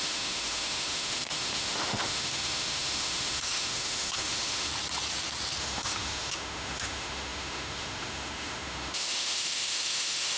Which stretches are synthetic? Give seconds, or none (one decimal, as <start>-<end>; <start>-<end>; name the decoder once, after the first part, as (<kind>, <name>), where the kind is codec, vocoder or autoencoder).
0.0-4.7 (autoencoder, DAC-VAE); 5.6-10.4